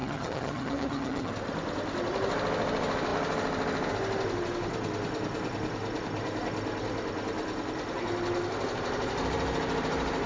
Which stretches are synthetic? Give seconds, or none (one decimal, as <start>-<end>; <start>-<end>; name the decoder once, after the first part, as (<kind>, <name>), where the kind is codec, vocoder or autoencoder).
0.0-1.3 (vocoder, HiFi-GAN)

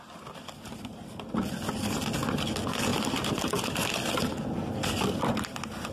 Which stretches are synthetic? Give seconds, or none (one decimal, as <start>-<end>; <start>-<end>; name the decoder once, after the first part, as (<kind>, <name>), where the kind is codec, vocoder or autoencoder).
none

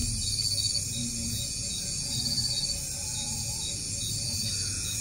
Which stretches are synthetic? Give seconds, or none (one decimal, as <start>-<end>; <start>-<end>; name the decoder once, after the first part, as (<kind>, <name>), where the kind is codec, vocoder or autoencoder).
1.2-2.6 (vocoder, Vocos); 3.0-5.0

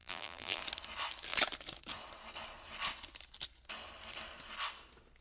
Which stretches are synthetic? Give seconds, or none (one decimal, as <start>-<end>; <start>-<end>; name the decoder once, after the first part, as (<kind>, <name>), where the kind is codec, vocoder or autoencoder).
0.0-0.6 (vocoder, BigVGAN v2)

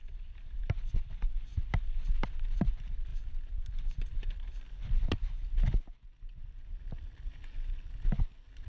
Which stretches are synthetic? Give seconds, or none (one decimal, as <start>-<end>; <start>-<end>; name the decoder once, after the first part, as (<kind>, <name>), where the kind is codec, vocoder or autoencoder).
none